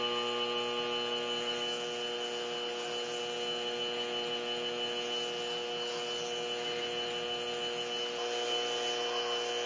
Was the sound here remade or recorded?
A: recorded